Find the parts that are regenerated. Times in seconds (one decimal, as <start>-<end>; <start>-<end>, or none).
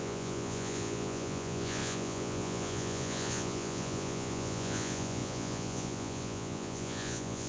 0.0-7.5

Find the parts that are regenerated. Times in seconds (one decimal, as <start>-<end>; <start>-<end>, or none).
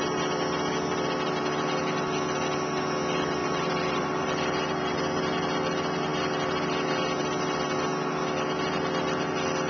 3.4-5.0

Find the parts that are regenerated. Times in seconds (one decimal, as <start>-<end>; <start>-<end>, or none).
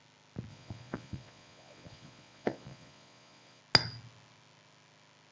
0.5-3.6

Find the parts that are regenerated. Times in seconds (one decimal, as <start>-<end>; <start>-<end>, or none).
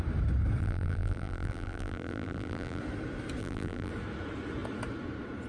0.6-2.8; 3.4-3.9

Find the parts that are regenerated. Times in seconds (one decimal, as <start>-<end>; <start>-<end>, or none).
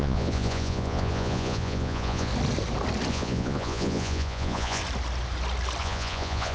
0.0-2.3; 3.1-4.8; 5.8-6.5